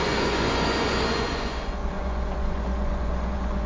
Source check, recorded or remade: remade